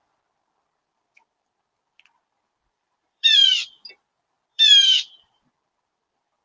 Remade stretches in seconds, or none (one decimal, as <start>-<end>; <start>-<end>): 0.8-3.8; 4.5-6.4